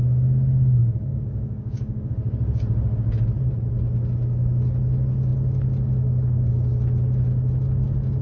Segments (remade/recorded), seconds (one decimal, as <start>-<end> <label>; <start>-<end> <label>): 0.0-0.8 recorded; 0.8-2.1 remade; 2.1-8.2 recorded